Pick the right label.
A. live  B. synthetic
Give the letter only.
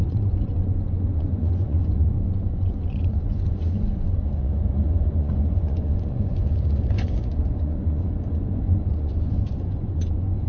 B